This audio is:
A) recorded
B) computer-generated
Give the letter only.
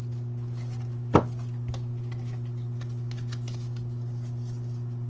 A